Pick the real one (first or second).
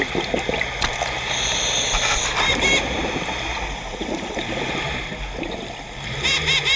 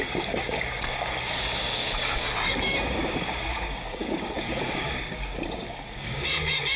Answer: first